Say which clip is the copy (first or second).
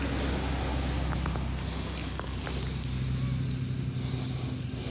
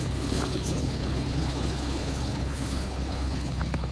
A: second